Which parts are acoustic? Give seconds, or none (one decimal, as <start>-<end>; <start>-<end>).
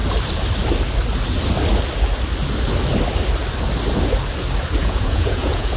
0.0-4.8